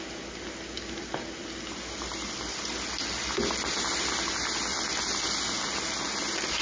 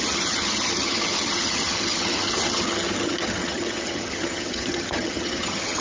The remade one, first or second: second